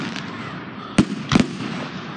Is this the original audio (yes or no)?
yes